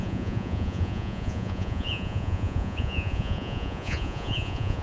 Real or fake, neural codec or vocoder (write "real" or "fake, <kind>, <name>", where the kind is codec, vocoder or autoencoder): fake, vocoder, Vocos